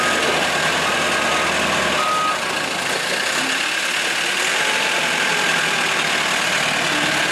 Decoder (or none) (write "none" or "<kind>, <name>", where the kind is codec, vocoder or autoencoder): none